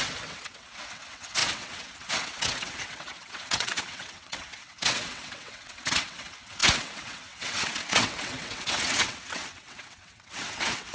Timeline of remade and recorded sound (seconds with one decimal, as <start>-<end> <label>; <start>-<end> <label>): 0.0-10.9 remade